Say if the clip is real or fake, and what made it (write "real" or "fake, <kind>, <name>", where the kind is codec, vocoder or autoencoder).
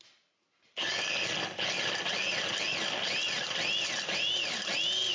real